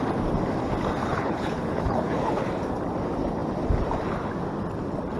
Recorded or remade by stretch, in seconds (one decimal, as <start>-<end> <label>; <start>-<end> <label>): 0.0-1.0 recorded; 1.0-2.5 remade; 2.5-5.2 recorded